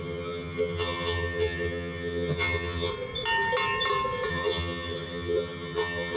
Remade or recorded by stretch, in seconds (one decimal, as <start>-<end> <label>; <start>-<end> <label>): 0.0-2.9 remade; 2.9-4.3 recorded; 4.3-6.2 remade